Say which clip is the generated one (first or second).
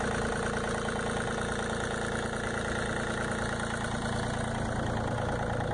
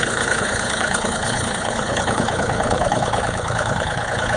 second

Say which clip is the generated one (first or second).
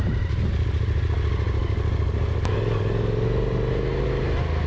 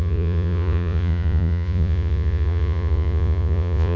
second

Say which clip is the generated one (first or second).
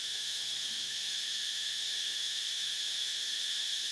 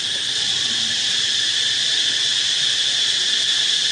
first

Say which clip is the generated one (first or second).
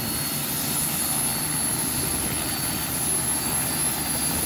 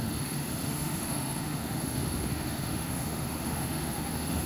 second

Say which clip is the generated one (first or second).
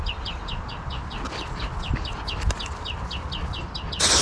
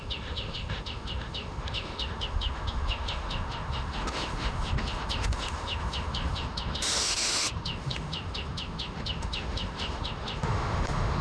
second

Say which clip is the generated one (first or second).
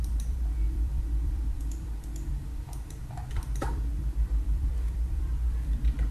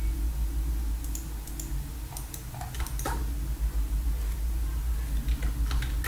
first